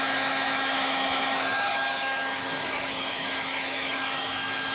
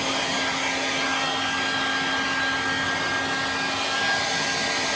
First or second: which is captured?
second